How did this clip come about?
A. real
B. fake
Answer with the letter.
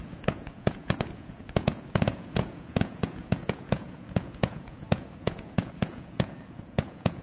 B